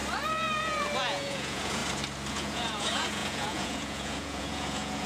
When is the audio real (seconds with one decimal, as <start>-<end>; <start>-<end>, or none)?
0.0-1.0; 1.8-2.3